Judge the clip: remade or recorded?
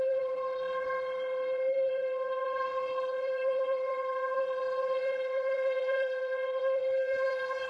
remade